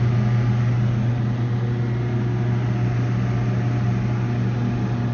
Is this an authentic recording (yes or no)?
yes